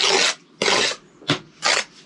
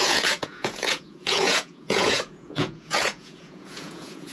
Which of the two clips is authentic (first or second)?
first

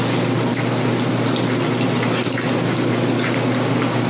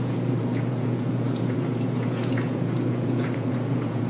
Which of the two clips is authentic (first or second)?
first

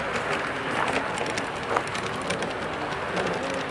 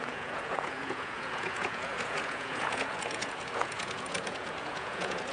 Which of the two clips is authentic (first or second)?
first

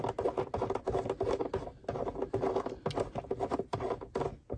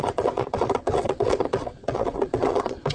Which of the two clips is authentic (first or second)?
first